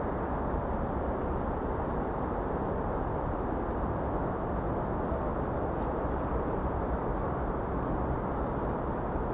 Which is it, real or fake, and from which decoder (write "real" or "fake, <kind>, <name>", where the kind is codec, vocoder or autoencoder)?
real